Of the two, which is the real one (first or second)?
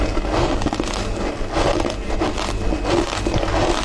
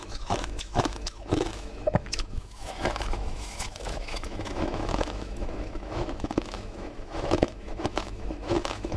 first